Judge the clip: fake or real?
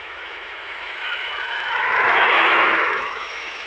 fake